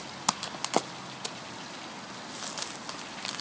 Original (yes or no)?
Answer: yes